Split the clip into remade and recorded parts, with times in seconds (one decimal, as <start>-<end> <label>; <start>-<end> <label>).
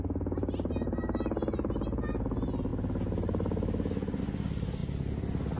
0.0-5.6 recorded